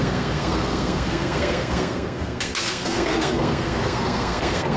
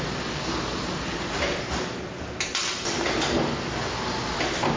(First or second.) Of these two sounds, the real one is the second